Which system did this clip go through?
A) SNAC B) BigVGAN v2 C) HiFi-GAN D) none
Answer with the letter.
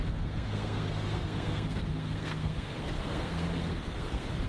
A